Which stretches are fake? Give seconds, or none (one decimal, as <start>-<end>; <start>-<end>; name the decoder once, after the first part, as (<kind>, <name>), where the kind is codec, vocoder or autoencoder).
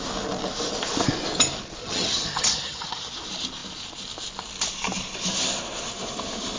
1.8-3.1 (vocoder, HiFi-GAN)